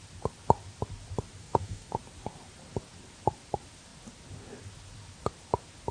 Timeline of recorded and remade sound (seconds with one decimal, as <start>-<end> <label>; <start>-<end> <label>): 0.0-1.4 recorded; 1.4-2.0 remade; 2.0-5.9 recorded